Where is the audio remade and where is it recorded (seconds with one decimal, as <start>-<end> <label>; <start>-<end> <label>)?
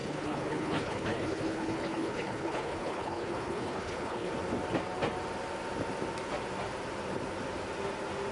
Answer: 0.0-4.3 remade; 4.3-8.3 recorded